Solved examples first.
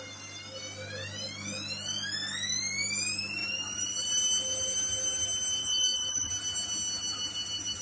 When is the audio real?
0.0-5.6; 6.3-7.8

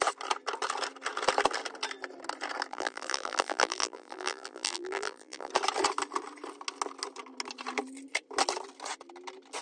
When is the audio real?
0.0-2.7; 5.5-9.6

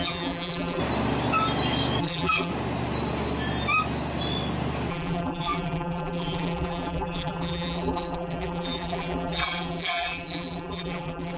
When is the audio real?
0.8-2.0; 2.5-4.9